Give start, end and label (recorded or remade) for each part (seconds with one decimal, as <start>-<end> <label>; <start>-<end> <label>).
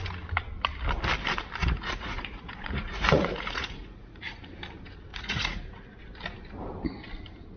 0.0-1.6 recorded; 1.6-4.4 remade; 4.4-5.1 recorded; 5.1-6.0 remade; 6.0-7.6 recorded